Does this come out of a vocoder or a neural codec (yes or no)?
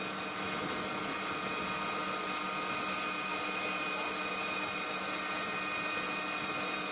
no